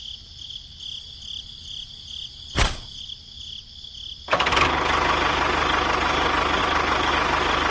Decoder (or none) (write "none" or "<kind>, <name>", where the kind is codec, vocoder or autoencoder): none